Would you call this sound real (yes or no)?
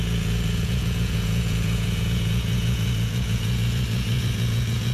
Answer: no